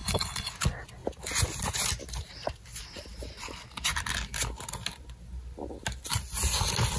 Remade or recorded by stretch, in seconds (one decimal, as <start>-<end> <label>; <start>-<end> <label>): 0.0-0.5 remade; 0.5-7.0 recorded